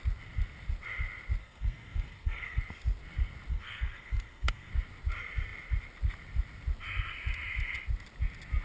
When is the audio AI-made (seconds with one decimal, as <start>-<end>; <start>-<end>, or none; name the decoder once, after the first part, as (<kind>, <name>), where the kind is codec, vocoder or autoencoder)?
1.4-2.6 (codec, SNAC); 3.5-4.7